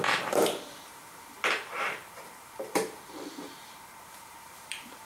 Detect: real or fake fake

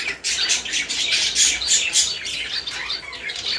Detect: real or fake fake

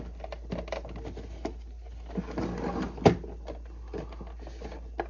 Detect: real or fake real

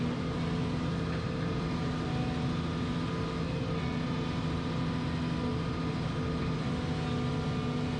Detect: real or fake real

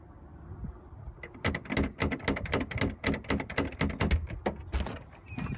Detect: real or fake real